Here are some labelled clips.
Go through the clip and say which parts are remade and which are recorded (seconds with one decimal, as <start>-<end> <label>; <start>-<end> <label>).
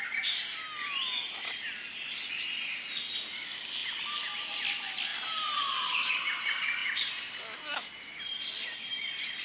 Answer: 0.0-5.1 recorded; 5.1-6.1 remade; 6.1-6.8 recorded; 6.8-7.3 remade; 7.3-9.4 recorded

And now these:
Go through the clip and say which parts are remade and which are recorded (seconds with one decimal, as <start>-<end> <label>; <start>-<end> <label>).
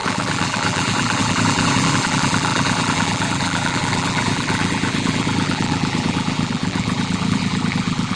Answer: 0.0-8.2 remade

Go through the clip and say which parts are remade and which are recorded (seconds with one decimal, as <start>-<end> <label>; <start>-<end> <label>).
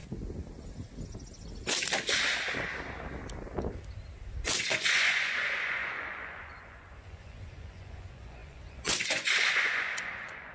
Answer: 0.0-4.6 recorded; 4.6-10.5 remade